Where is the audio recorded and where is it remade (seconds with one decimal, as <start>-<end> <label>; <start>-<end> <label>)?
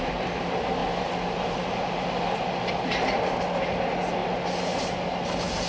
0.0-5.7 recorded